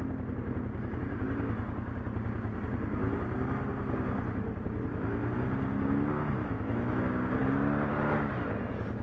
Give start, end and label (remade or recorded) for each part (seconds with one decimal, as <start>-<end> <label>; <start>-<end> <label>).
0.0-6.4 recorded; 6.4-7.0 remade; 7.0-9.0 recorded